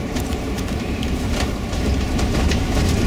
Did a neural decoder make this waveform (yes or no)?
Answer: yes